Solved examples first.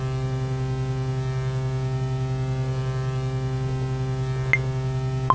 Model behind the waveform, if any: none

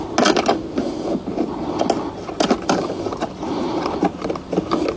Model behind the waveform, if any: none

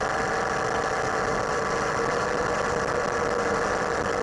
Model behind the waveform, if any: none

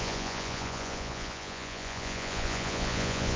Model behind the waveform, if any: vocoder, Vocos